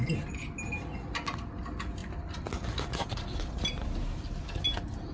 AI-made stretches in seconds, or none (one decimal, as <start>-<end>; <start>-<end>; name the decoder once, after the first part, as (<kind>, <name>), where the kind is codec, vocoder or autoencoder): none